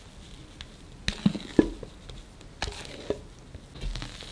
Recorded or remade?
recorded